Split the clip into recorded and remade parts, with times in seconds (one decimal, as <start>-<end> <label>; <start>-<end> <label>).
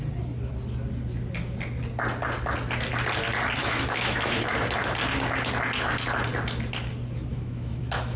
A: 0.0-3.6 recorded; 3.6-4.5 remade; 4.5-7.3 recorded; 7.3-8.2 remade